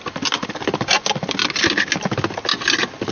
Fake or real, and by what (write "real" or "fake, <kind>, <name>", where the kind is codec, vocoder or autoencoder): real